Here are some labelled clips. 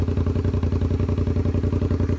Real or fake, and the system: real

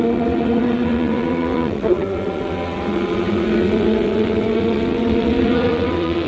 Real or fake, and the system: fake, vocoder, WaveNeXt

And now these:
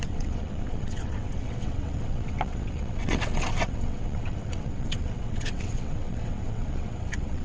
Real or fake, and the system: fake, vocoder, WaveNeXt